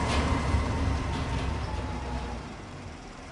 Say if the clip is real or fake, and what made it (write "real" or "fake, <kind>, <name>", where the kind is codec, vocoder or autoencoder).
fake, vocoder, BigVGAN v2